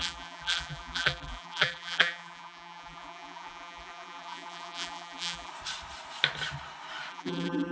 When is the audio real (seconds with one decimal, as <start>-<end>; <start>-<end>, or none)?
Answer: 5.5-7.1